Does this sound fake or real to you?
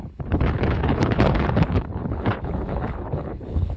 fake